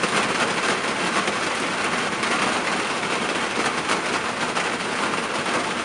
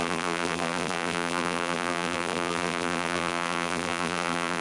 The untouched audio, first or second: first